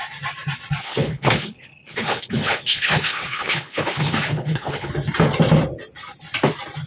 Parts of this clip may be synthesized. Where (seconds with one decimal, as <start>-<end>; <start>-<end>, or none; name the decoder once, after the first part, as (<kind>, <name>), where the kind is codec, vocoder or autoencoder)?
0.8-4.9 (codec, HILCodec)